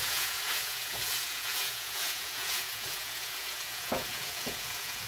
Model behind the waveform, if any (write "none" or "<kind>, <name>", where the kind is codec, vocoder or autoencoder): vocoder, Vocos